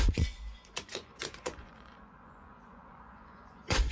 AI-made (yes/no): yes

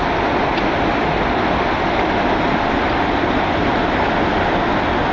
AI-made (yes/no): no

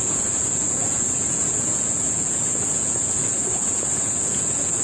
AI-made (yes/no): yes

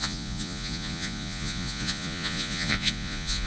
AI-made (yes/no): yes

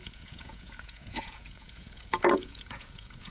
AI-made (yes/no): yes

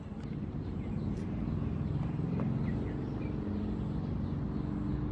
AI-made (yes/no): no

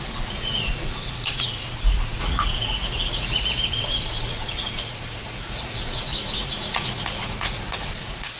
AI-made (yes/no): yes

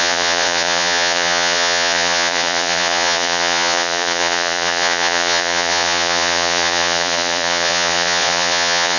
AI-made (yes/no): yes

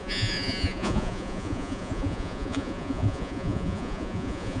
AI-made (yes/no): yes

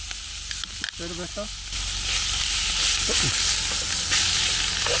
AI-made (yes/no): no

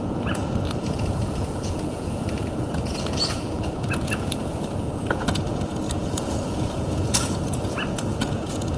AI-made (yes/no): yes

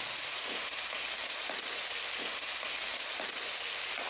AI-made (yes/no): no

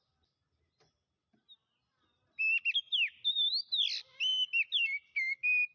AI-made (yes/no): no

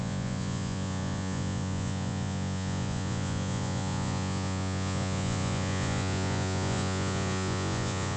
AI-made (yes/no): yes